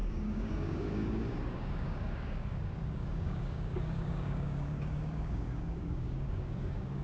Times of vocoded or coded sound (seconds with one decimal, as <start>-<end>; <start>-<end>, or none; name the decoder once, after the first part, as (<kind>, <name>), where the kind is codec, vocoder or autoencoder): 0.0-7.0 (codec, DAC)